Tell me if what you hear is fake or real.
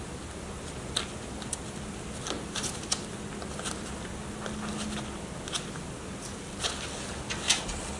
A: real